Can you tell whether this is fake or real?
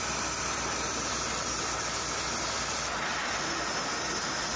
real